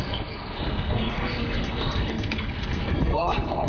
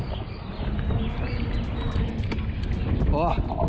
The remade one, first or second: first